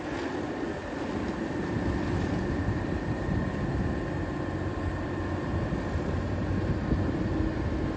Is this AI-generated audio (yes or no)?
no